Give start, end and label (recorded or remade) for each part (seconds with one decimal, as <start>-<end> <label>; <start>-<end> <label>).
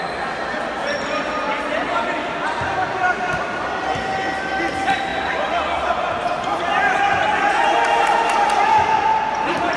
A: 0.0-5.1 recorded; 5.1-7.6 remade; 7.6-9.8 recorded